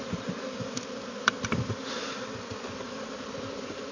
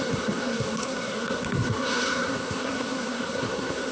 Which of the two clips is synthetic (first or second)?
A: second